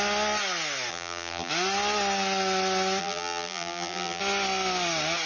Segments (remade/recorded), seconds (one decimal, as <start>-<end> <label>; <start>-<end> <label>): 0.0-0.9 recorded; 0.9-1.5 remade; 1.5-3.0 recorded; 3.0-4.2 remade; 4.2-5.3 recorded